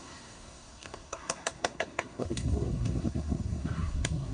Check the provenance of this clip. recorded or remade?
remade